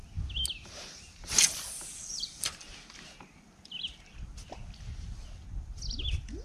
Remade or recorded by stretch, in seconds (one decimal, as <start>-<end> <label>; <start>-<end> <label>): 0.0-1.6 recorded; 1.6-6.4 remade